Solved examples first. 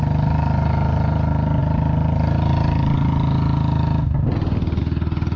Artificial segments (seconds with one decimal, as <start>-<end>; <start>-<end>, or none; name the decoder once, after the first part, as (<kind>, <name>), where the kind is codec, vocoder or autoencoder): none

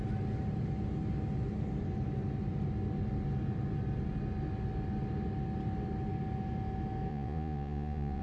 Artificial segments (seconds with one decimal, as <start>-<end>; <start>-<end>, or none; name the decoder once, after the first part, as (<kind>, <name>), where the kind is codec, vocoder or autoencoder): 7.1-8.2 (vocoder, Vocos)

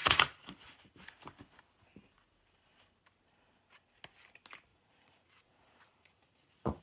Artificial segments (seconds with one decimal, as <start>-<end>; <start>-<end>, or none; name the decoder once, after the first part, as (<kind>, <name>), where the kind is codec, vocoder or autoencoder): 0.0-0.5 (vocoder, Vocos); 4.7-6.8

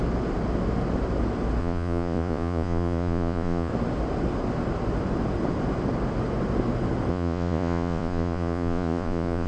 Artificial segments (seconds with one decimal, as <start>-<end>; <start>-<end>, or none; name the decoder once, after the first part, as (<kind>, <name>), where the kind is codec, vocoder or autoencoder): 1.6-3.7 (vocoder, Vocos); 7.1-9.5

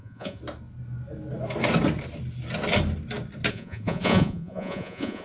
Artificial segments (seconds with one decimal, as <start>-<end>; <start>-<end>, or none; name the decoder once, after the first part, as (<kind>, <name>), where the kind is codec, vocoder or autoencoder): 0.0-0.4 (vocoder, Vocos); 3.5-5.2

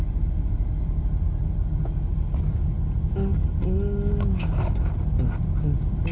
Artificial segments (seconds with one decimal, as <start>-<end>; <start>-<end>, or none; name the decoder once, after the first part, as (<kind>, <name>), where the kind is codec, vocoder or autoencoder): none